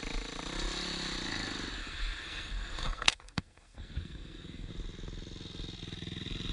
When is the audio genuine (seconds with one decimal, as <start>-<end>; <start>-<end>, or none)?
0.0-1.8; 4.7-6.5